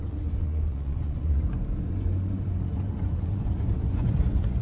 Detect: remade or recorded remade